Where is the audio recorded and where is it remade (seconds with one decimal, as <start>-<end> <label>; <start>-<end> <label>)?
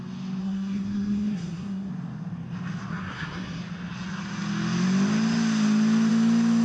0.0-0.4 recorded; 0.4-1.9 remade; 1.9-2.9 recorded; 2.9-3.6 remade; 3.6-6.6 recorded